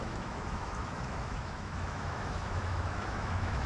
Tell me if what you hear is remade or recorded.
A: remade